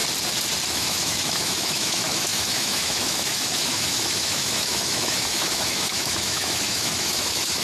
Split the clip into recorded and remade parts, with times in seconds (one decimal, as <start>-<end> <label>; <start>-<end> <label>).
0.0-0.7 recorded; 0.7-7.6 remade